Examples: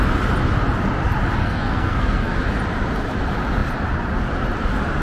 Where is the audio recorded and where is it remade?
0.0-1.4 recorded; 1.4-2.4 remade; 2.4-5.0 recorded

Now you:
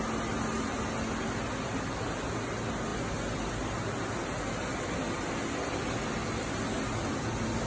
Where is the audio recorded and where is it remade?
0.0-7.7 recorded

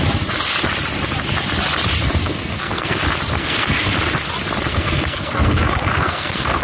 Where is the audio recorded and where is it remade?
0.0-2.2 recorded; 2.2-3.0 remade; 3.0-3.4 recorded; 3.4-3.9 remade; 3.9-4.7 recorded; 4.7-6.6 remade

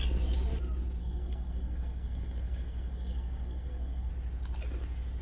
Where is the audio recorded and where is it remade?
0.0-1.0 recorded; 1.0-4.1 remade; 4.1-5.2 recorded

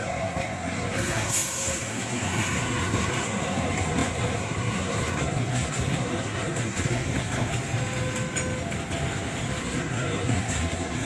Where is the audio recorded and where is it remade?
0.0-7.5 remade; 7.5-9.6 recorded; 9.6-11.0 remade

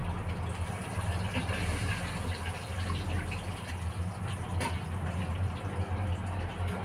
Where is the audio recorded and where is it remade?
0.0-6.8 recorded

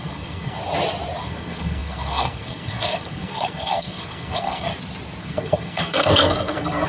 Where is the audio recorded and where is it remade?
0.0-0.6 remade; 0.6-1.2 recorded; 1.2-4.7 remade; 4.7-5.2 recorded; 5.2-6.9 remade

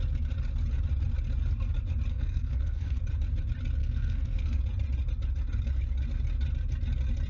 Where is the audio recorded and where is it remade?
0.0-2.1 recorded; 2.1-3.0 remade; 3.0-3.8 recorded; 3.8-4.6 remade; 4.6-7.3 recorded